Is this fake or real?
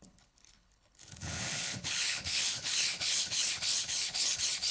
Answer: fake